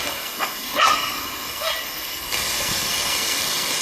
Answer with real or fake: fake